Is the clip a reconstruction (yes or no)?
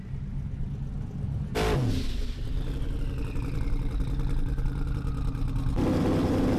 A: no